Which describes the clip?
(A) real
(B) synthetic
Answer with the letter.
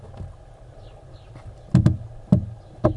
A